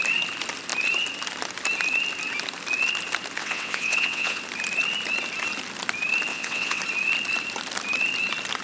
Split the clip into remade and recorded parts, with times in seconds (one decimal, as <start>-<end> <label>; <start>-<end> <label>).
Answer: 0.0-3.4 recorded; 3.4-4.4 remade; 4.4-6.3 recorded; 6.3-6.8 remade; 6.8-8.6 recorded

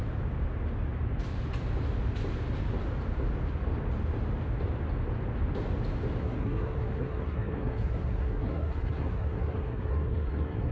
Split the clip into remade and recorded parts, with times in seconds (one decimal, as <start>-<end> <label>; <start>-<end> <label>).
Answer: 0.0-6.2 recorded; 6.2-10.7 remade

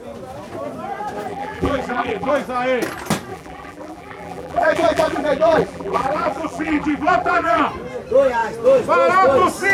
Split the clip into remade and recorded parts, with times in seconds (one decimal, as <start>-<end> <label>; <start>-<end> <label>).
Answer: 0.0-1.3 recorded; 1.3-2.3 remade; 2.3-3.3 recorded; 3.3-7.6 remade; 7.6-9.7 recorded

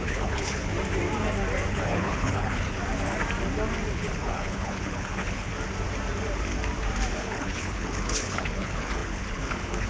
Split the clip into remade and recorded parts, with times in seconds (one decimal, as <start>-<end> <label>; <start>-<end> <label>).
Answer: 0.0-0.7 remade; 0.7-1.7 recorded; 1.7-2.8 remade; 2.8-3.9 recorded; 3.9-5.5 remade; 5.5-7.2 recorded; 7.2-9.9 remade

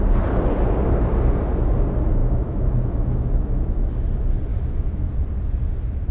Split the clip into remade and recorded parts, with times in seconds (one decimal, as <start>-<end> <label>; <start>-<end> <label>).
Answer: 0.0-2.2 recorded; 2.2-3.9 remade; 3.9-4.5 recorded; 4.5-5.1 remade; 5.1-6.1 recorded

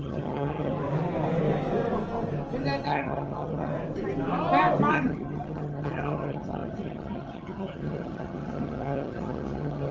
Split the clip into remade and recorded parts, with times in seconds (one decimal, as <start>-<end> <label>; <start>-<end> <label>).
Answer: 0.0-0.7 remade; 0.7-2.8 recorded; 2.8-3.7 remade; 3.7-4.9 recorded; 4.9-9.9 remade

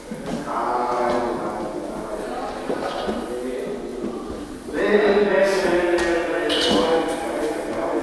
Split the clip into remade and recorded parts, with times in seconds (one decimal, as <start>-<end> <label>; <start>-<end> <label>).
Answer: 0.0-2.1 recorded; 2.1-3.0 remade; 3.0-3.9 recorded; 3.9-4.8 remade; 4.8-8.0 recorded

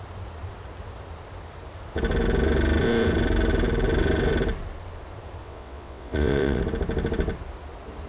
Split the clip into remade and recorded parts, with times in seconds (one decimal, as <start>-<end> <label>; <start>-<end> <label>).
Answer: 0.0-5.4 recorded; 5.4-6.6 remade; 6.6-8.1 recorded